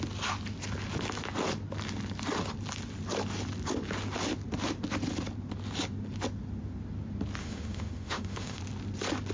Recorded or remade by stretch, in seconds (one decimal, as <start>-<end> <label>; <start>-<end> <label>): 0.0-7.4 recorded; 7.4-8.6 remade; 8.6-9.3 recorded